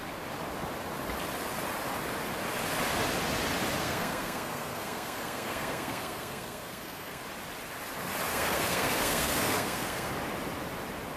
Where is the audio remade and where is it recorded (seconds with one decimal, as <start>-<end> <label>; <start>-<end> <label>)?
0.0-3.8 recorded; 3.8-7.2 remade; 7.2-8.3 recorded; 8.3-10.1 remade; 10.1-11.2 recorded